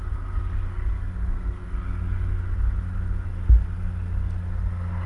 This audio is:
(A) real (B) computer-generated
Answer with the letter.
A